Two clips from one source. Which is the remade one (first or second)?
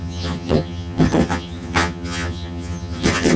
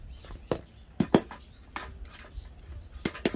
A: first